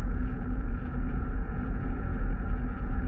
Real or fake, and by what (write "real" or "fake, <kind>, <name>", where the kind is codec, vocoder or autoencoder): fake, vocoder, Vocos